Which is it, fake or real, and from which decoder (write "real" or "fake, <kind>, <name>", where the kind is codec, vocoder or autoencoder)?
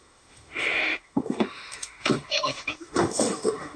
fake, autoencoder, DAC-VAE